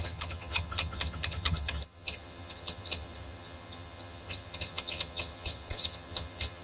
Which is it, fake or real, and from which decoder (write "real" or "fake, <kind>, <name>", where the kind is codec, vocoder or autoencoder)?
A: fake, vocoder, HiFi-GAN